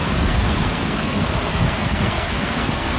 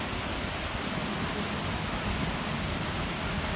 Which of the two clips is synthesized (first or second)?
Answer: first